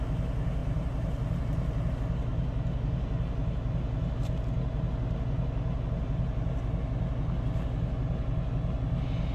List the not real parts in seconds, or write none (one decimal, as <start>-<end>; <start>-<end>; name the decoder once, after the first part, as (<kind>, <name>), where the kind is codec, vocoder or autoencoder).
0.6-1.9 (vocoder, BigVGAN v2)